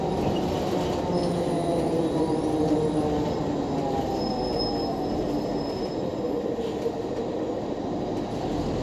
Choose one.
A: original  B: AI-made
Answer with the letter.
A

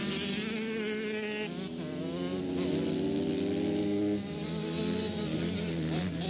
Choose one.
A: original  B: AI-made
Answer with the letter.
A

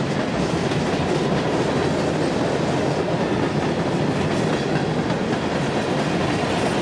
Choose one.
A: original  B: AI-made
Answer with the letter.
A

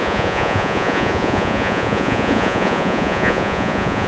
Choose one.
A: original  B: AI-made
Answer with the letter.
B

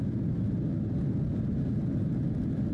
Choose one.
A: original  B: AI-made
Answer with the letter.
A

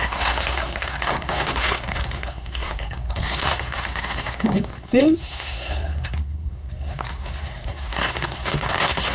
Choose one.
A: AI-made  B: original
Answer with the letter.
A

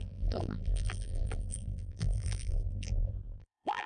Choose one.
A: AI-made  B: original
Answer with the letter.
A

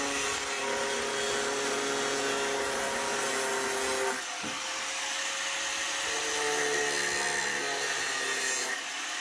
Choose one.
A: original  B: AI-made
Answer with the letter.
A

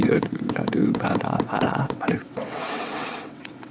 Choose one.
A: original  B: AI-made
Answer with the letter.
B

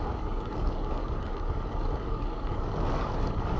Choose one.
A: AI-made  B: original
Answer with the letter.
A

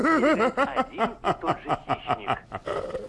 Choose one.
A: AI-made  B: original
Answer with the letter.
B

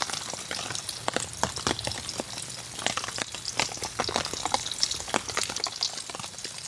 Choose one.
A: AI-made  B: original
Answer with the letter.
B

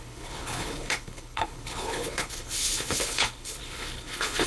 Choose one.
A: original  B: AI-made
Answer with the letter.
B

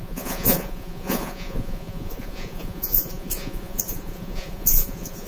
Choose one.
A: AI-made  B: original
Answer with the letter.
A